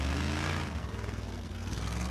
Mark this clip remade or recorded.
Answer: remade